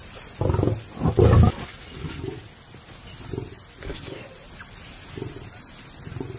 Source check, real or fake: real